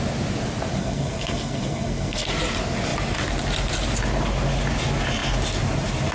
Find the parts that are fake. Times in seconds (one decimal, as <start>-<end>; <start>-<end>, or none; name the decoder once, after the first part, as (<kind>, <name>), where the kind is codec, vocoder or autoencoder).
0.8-2.3 (codec, SNAC)